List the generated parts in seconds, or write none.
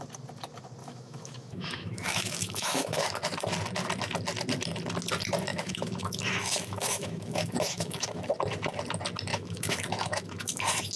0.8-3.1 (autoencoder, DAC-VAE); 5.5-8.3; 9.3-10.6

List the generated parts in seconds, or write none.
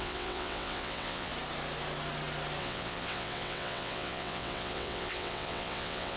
0.0-1.3 (vocoder, WaveNeXt); 2.6-6.2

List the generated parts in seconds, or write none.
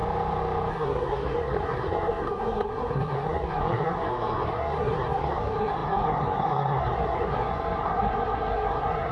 0.7-9.1 (codec, SNAC)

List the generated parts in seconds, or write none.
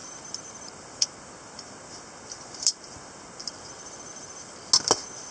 none